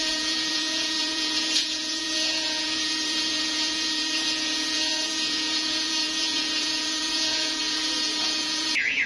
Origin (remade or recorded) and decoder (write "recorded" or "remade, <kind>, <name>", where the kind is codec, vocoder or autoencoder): remade, vocoder, Vocos